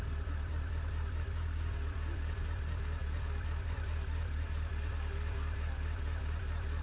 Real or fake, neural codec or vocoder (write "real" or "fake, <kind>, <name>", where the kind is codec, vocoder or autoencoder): real